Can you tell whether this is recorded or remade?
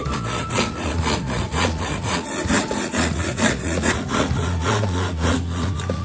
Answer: remade